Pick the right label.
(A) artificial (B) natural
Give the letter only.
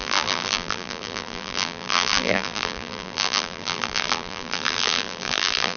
A